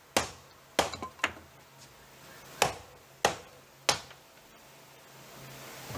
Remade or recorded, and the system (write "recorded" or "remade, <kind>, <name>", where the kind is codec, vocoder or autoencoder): recorded